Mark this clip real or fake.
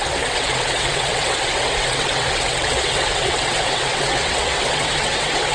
fake